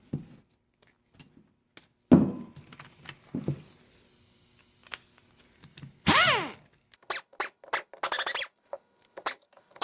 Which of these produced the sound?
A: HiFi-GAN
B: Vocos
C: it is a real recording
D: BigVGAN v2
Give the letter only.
C